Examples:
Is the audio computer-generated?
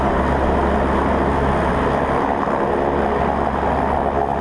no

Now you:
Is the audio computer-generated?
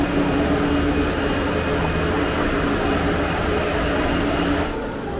no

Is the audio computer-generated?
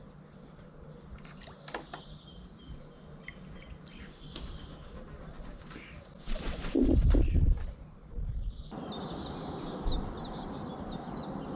no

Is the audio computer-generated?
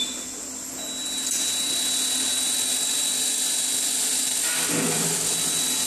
no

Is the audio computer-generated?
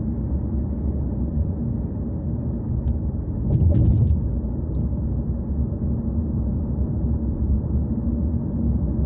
no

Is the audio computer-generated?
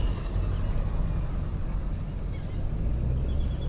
no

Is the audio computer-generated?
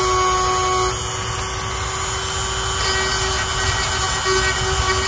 no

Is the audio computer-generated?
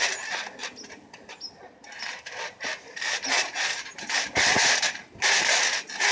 no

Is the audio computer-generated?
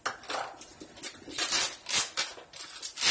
no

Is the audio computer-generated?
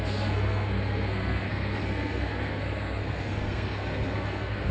yes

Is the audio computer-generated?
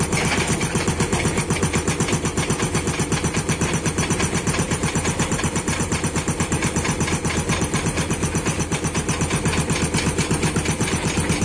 no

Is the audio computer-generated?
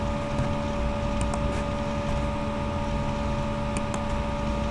no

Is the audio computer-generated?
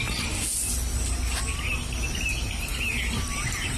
no